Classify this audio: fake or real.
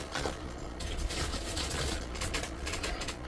fake